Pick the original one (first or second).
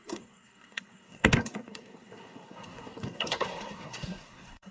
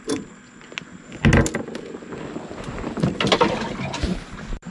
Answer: second